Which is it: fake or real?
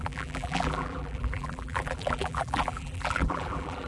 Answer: fake